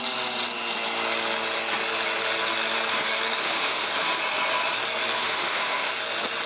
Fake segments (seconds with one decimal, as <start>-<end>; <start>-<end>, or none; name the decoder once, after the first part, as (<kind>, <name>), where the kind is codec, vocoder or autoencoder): 3.4-3.9 (autoencoder, DAC-VAE); 5.2-5.9

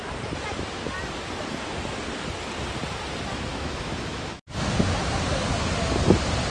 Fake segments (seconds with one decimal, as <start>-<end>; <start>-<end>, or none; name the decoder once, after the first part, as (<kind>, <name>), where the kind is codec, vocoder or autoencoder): 3.5-4.7 (autoencoder, DAC-VAE)

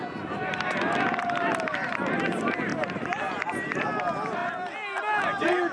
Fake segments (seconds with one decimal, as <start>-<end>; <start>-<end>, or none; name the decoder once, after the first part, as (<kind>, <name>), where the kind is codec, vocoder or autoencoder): none

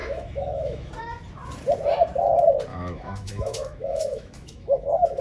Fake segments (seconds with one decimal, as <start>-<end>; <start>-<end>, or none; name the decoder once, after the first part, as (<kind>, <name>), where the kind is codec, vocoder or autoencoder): 0.0-0.9 (autoencoder, DAC-VAE); 2.7-5.2

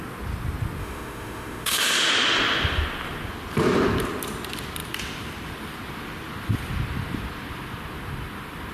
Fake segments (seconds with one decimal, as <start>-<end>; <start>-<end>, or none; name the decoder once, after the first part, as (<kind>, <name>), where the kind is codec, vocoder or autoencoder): 0.8-2.1 (autoencoder, DAC-VAE)